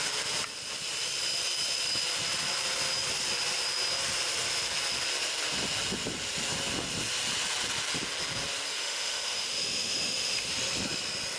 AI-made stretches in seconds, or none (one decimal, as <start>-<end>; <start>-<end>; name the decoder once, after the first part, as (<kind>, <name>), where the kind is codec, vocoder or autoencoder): 8.7-10.5 (autoencoder, DAC-VAE)